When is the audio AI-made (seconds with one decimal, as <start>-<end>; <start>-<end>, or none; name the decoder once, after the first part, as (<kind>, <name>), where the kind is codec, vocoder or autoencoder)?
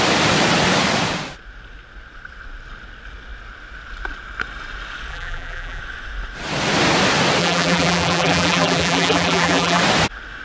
5.1-5.8 (vocoder, BigVGAN v2); 7.4-9.8